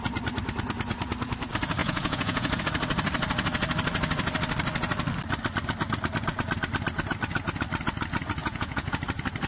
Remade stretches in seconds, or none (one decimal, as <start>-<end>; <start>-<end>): 1.8-2.6; 8.4-9.0